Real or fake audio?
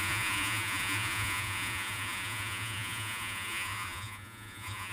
fake